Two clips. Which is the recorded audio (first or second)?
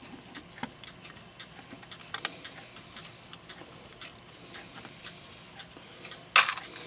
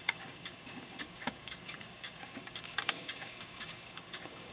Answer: first